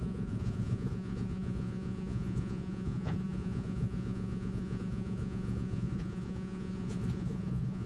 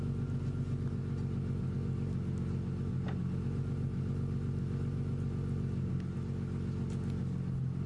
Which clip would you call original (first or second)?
second